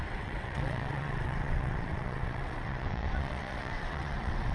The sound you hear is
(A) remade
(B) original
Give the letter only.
A